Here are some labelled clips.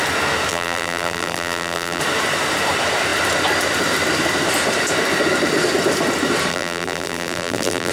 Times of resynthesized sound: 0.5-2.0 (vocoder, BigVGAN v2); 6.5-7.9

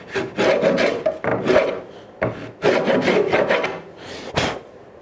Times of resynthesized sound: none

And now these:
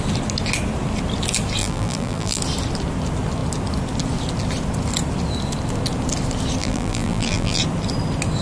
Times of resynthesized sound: 1.6-2.4 (vocoder, BigVGAN v2); 6.6-7.6

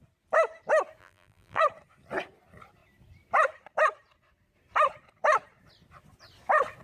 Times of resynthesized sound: 1.0-1.6 (vocoder, BigVGAN v2)